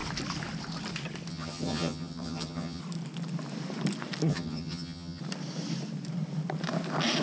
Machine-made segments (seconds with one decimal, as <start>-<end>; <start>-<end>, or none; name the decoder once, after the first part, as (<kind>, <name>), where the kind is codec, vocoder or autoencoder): 1.3-2.8 (vocoder, HiFi-GAN); 4.3-5.2